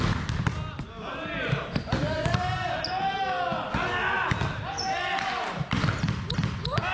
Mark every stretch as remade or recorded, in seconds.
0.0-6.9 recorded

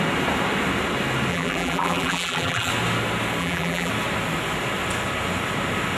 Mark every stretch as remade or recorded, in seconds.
0.0-1.3 recorded; 1.3-2.7 remade; 2.7-3.4 recorded; 3.4-3.9 remade; 3.9-6.0 recorded

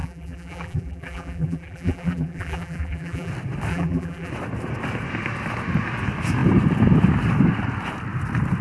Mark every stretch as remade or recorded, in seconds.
0.0-3.3 remade; 3.3-3.7 recorded; 3.7-4.3 remade; 4.3-8.6 recorded

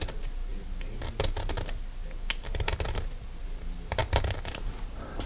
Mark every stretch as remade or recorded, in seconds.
0.0-0.5 remade; 0.5-3.4 recorded; 3.4-4.0 remade; 4.0-4.8 recorded; 4.8-5.3 remade

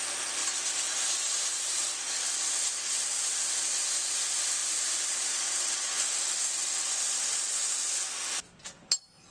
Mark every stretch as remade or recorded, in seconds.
0.0-0.4 recorded; 0.4-2.3 remade; 2.3-4.6 recorded; 4.6-5.9 remade; 5.9-9.3 recorded